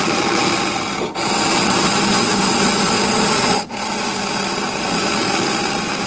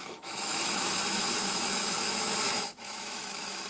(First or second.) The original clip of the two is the first